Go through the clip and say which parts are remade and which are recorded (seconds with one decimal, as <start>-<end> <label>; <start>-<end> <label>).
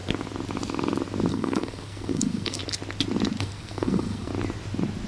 0.0-1.3 recorded; 1.3-2.6 remade; 2.6-3.4 recorded; 3.4-4.3 remade; 4.3-5.1 recorded